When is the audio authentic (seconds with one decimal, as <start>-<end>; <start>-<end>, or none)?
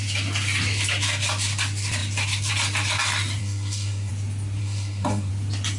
0.0-3.4; 4.1-4.6; 5.3-5.8